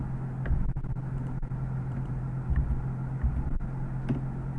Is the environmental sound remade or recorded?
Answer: recorded